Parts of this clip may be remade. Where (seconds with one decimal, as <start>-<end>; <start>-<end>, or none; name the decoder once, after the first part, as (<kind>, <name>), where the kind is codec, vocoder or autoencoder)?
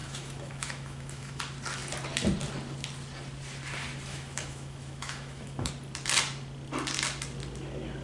0.0-1.4 (autoencoder, DAC-VAE); 4.1-5.7